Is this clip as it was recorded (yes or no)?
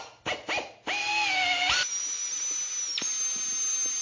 yes